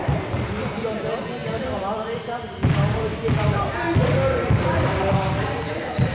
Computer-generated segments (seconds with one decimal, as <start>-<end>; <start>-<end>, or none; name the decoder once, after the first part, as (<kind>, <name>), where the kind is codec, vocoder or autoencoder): none